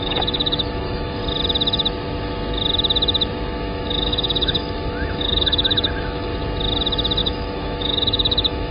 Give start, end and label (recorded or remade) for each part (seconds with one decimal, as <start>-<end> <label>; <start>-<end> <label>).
0.0-1.2 remade; 1.2-3.5 recorded; 3.5-6.3 remade; 6.3-7.2 recorded; 7.2-8.7 remade